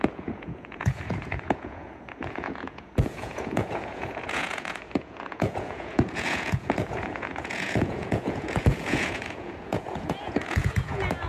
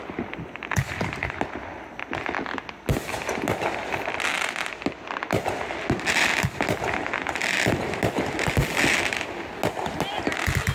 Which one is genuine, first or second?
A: second